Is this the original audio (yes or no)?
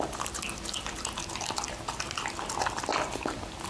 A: yes